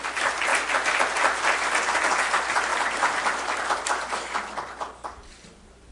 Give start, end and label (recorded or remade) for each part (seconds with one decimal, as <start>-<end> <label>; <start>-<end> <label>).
0.0-2.7 recorded; 2.7-3.9 remade; 3.9-5.9 recorded